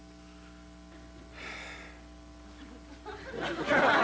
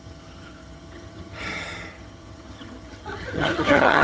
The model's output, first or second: second